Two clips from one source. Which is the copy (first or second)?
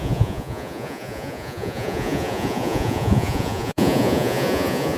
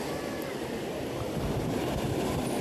first